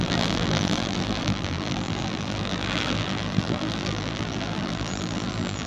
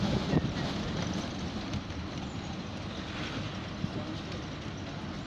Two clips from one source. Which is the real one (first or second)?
second